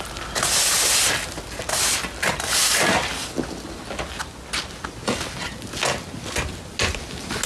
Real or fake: real